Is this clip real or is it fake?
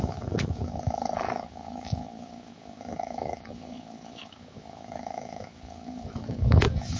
fake